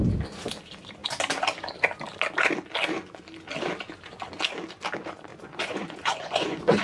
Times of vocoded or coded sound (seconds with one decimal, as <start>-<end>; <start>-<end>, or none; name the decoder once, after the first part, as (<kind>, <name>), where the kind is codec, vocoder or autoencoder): 5.3-6.8 (vocoder, Vocos)